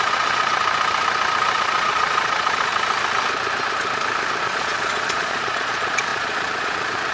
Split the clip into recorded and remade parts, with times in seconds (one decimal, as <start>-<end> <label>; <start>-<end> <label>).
0.0-0.6 remade; 0.6-1.5 recorded; 1.5-2.7 remade; 2.7-4.4 recorded; 4.4-7.1 remade

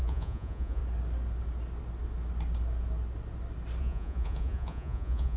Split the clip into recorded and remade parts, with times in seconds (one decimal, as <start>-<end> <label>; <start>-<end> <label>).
0.0-0.8 remade; 0.8-3.8 recorded; 3.8-5.4 remade